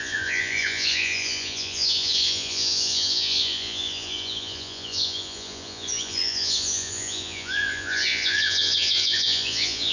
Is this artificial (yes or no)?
yes